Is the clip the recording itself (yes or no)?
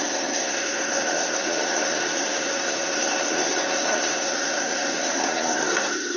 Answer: no